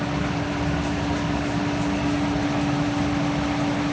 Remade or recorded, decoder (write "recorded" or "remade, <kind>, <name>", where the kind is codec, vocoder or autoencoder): recorded